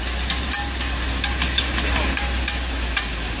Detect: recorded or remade recorded